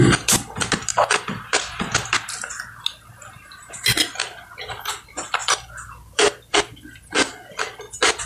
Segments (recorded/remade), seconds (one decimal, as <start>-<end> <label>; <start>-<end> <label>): 0.0-4.2 recorded; 4.2-4.8 remade; 4.8-5.4 recorded; 5.4-7.0 remade; 7.0-8.3 recorded